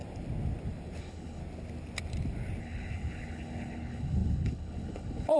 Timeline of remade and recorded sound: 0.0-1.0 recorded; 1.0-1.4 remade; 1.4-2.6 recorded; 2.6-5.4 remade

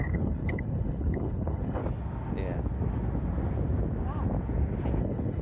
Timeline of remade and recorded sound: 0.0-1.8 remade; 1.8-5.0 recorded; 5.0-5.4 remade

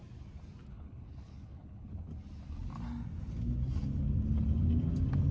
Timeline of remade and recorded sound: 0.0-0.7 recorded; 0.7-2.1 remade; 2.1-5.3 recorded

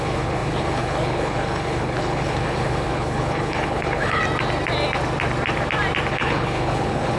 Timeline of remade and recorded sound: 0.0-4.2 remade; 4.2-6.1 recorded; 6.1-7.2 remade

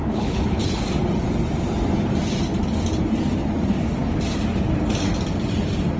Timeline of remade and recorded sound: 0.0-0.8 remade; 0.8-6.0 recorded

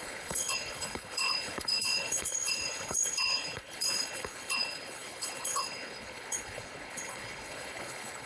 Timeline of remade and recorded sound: 0.0-8.3 remade

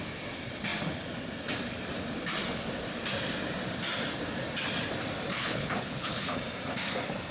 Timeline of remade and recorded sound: 0.0-5.3 recorded; 5.3-6.3 remade; 6.3-7.3 recorded